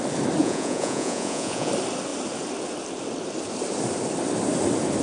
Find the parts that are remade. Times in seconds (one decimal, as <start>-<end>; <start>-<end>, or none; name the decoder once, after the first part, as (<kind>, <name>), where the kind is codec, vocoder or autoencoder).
0.4-1.7 (vocoder, Vocos)